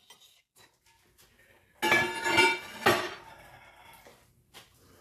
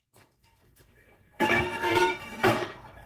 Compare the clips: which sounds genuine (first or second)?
first